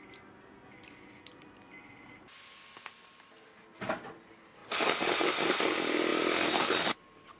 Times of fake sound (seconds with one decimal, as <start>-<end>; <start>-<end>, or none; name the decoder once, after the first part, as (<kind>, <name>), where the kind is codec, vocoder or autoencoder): none